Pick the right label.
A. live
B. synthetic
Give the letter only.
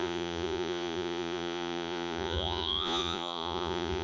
B